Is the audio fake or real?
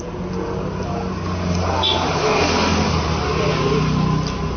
real